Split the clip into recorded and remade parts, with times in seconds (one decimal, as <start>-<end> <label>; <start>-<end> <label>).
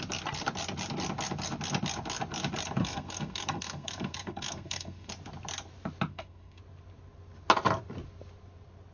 0.0-2.8 recorded; 2.8-5.1 remade; 5.1-6.1 recorded; 6.1-6.6 remade; 6.6-8.9 recorded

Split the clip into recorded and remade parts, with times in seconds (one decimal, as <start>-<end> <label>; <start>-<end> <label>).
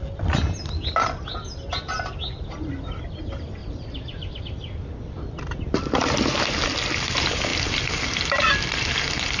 0.0-3.6 recorded; 3.6-4.4 remade; 4.4-7.5 recorded; 7.5-8.4 remade; 8.4-9.4 recorded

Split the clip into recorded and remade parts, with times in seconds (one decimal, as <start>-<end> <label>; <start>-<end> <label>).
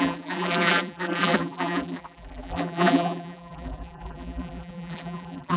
0.0-5.6 remade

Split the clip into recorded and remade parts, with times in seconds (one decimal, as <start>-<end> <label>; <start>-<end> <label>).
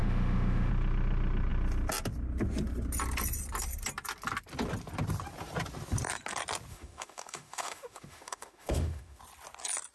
0.0-0.7 remade; 0.7-6.7 recorded; 6.7-9.2 remade; 9.2-9.9 recorded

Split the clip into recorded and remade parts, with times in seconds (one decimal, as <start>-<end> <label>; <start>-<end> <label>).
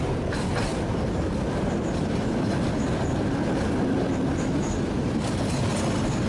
0.0-6.3 recorded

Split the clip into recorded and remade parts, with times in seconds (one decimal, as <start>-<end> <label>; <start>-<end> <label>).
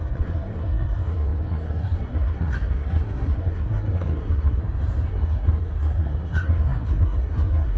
0.0-4.6 remade; 4.6-5.1 recorded; 5.1-7.8 remade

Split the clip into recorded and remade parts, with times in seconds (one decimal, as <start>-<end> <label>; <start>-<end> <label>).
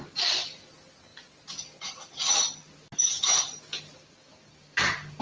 0.0-5.2 recorded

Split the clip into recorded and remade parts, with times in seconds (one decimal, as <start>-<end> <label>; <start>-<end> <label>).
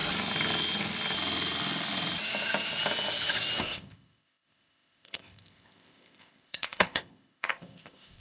0.0-3.6 recorded; 3.6-8.2 remade